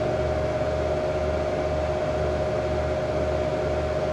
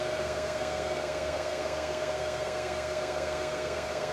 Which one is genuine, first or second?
first